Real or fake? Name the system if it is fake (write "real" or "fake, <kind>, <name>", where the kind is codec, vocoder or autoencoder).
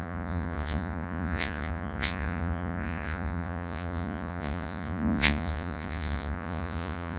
fake, vocoder, Vocos